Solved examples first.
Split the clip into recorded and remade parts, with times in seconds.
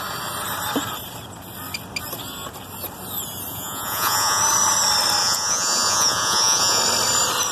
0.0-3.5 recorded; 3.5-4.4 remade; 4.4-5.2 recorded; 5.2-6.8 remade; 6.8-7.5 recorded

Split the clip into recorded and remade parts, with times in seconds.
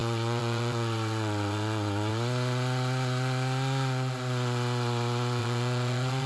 0.0-2.1 remade; 2.1-5.4 recorded; 5.4-6.3 remade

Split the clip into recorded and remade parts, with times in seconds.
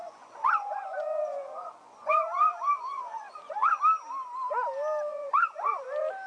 0.0-3.8 remade; 3.8-5.1 recorded; 5.1-5.8 remade; 5.8-6.3 recorded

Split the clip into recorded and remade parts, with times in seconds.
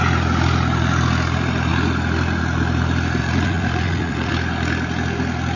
0.0-3.2 recorded; 3.2-4.3 remade; 4.3-5.6 recorded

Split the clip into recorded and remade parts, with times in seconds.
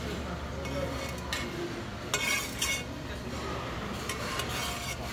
0.0-5.1 recorded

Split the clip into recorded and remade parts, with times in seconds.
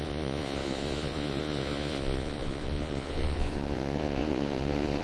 0.0-5.0 remade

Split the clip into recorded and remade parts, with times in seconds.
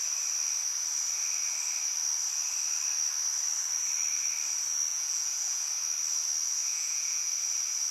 0.0-4.9 recorded; 4.9-5.6 remade; 5.6-6.7 recorded; 6.7-7.3 remade; 7.3-7.9 recorded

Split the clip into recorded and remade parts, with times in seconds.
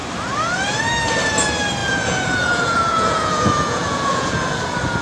0.0-1.8 recorded; 1.8-4.6 remade; 4.6-5.0 recorded